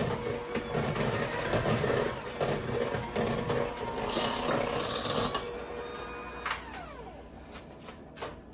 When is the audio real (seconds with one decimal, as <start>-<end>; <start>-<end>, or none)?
0.0-8.5